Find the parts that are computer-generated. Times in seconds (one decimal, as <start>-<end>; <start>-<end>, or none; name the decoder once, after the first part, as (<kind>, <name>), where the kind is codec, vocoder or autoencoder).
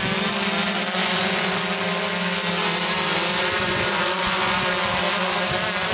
1.0-1.6 (vocoder, Vocos); 3.3-4.6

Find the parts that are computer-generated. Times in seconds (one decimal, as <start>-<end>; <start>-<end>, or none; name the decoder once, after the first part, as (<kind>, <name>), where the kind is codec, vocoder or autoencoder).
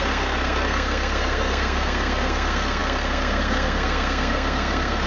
0.0-5.1 (codec, SNAC)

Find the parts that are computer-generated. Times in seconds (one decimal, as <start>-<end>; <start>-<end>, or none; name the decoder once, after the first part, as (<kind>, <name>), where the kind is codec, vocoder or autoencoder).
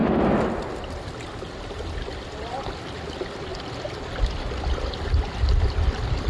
none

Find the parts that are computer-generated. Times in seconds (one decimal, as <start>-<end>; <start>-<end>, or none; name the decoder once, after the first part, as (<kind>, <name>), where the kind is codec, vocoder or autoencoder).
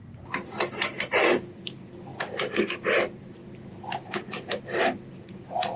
none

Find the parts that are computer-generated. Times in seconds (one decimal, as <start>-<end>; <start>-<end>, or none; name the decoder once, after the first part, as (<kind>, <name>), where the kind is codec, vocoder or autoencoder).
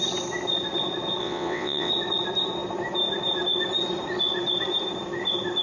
1.2-1.9 (vocoder, WaveNeXt)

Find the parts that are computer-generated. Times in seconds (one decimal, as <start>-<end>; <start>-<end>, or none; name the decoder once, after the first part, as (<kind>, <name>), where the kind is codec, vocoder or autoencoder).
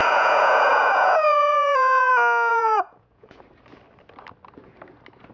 0.0-2.1 (vocoder, Vocos); 2.5-3.4